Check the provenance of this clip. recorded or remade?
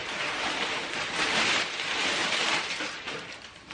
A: remade